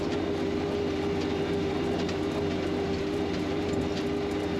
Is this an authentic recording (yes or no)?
yes